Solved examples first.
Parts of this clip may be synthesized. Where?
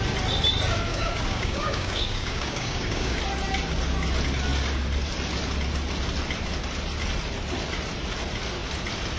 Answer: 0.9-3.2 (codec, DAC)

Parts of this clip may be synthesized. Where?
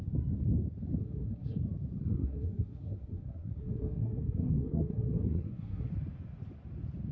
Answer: 1.0-1.6 (codec, SNAC); 2.0-5.9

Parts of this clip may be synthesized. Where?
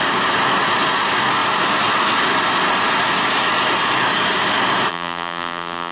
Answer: 4.9-5.9 (vocoder, BigVGAN v2)